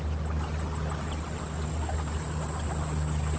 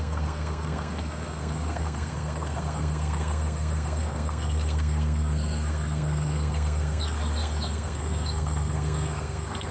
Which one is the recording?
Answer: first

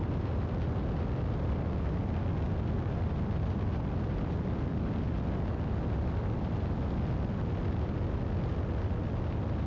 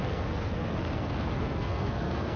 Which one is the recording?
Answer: first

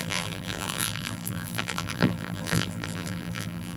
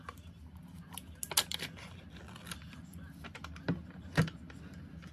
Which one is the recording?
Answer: second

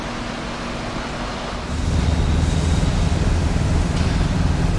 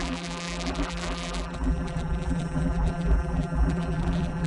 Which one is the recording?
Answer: first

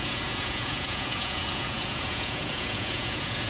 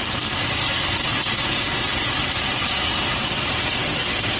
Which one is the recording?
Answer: second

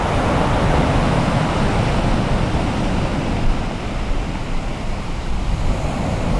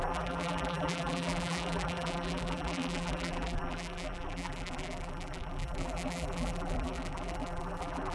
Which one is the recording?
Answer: first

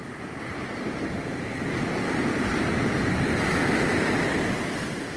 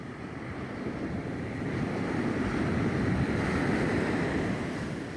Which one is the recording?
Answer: first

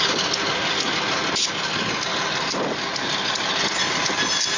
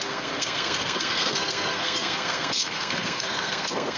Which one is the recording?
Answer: first